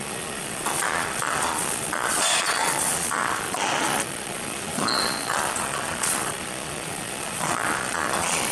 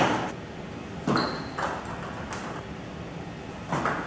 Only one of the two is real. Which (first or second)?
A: second